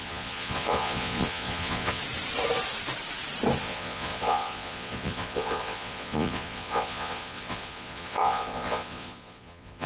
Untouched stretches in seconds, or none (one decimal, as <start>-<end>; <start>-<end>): 2.0-3.6